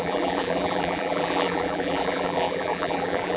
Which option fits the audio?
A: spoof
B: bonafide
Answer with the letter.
A